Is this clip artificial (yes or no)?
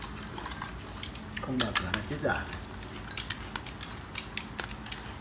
no